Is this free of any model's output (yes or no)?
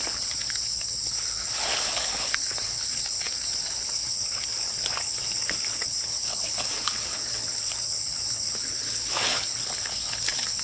no